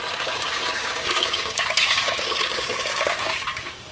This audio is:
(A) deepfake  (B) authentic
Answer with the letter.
A